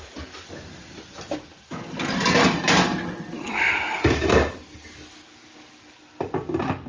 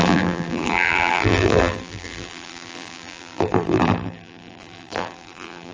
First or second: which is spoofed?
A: second